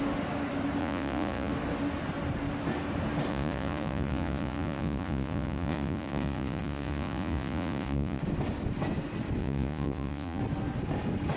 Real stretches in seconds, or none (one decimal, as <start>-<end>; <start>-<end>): 0.0-0.8; 1.5-3.3; 8.2-9.4; 10.4-11.4